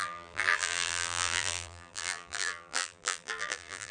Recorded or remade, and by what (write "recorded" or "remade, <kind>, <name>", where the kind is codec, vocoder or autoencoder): remade, vocoder, BigVGAN v2